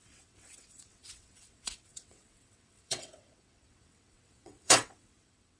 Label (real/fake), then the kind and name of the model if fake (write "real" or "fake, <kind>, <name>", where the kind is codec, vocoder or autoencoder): fake, vocoder, WaveNeXt